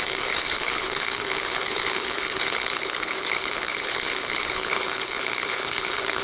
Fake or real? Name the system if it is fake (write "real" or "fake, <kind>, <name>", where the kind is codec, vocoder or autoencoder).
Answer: fake, codec, HILCodec